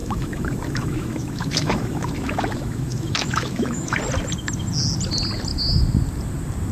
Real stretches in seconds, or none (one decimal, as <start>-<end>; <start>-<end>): 4.0-6.7